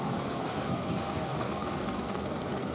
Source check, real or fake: fake